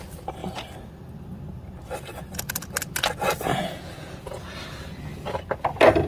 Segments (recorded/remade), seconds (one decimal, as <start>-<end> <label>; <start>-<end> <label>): 0.0-3.5 recorded; 3.5-4.6 remade; 4.6-6.1 recorded